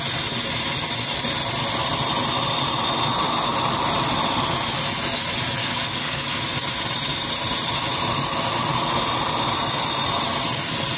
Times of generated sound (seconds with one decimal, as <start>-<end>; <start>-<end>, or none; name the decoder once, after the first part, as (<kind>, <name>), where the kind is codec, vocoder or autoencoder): 5.6-6.4 (codec, DAC)